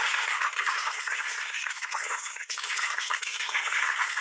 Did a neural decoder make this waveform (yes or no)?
yes